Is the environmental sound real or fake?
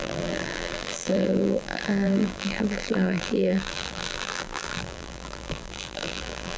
fake